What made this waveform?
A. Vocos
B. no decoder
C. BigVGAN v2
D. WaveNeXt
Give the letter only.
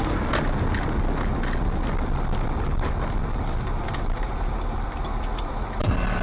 B